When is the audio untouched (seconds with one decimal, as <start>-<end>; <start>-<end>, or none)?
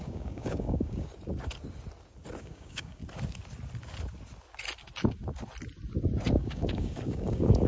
1.1-2.4; 3.0-6.3